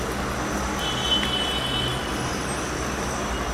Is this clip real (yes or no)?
yes